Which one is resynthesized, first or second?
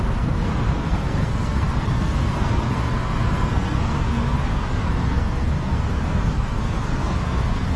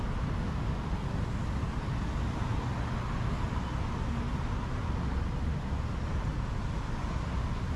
first